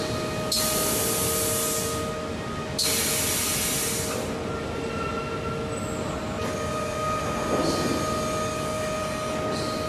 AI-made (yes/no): no